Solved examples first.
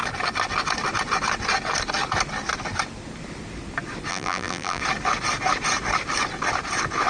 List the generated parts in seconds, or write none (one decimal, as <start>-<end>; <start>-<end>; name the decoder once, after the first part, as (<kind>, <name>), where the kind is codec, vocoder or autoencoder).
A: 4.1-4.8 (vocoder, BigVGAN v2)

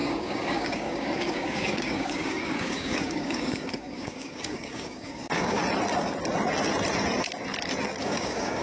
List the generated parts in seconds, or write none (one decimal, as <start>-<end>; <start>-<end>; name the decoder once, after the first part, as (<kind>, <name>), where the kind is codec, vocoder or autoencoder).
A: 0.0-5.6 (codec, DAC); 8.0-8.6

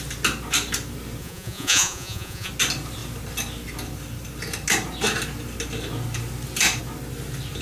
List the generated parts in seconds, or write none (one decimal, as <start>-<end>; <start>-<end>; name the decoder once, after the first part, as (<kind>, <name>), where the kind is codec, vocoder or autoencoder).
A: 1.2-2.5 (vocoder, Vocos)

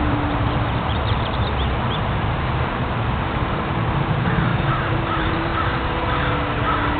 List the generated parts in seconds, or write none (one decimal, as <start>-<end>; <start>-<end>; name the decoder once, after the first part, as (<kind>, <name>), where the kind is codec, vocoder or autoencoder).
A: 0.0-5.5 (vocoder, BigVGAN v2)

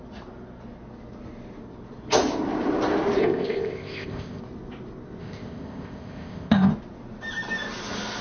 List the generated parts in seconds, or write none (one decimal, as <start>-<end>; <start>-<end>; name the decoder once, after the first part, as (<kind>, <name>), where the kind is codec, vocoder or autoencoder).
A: 3.2-4.4 (codec, ZipCodec); 5.2-6.7

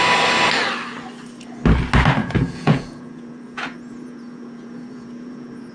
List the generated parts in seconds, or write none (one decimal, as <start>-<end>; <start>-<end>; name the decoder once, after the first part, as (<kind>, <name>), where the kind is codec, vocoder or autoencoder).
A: 2.2-5.7 (vocoder, Vocos)